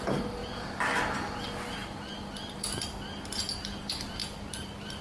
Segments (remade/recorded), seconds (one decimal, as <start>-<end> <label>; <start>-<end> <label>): 0.0-0.4 remade; 0.4-1.4 recorded; 1.4-5.0 remade